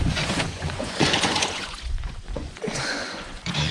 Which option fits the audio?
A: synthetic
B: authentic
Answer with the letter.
A